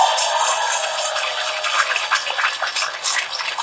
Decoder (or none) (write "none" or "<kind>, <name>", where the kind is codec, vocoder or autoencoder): none